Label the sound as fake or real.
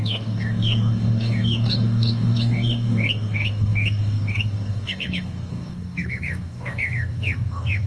fake